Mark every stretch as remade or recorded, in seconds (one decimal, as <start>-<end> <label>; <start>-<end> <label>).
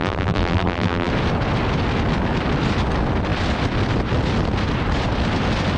0.0-1.1 remade; 1.1-5.8 recorded